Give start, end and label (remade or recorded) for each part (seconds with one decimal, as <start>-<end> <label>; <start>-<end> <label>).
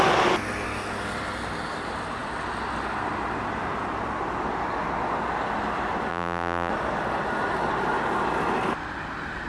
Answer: 0.0-6.1 recorded; 6.1-6.7 remade; 6.7-9.5 recorded